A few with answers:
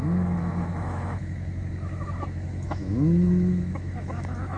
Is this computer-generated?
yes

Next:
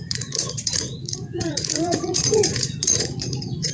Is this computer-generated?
yes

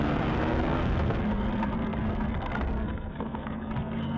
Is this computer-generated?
yes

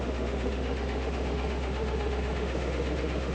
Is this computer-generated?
yes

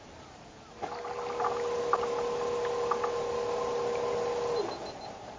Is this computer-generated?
no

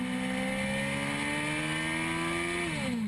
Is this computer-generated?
no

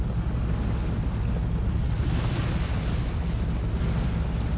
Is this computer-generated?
no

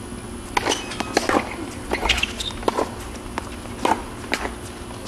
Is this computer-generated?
no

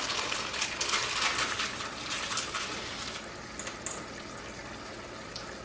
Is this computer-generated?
no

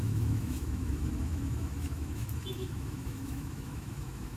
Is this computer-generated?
yes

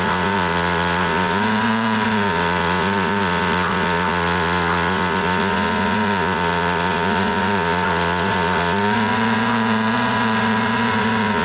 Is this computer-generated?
yes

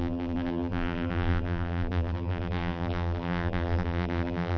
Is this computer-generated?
yes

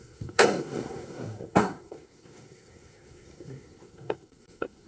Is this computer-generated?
yes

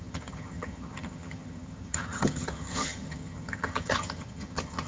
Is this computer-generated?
yes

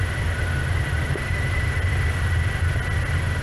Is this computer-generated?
no